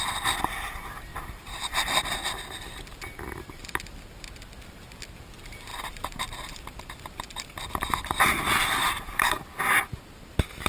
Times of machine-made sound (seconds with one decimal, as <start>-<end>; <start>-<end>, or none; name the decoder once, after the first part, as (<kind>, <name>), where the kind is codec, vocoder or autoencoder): 1.1-2.1 (vocoder, BigVGAN v2); 5.7-8.0; 8.8-9.4